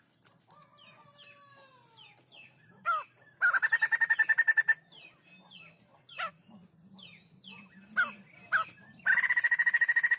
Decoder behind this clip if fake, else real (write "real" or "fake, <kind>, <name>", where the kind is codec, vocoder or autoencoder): real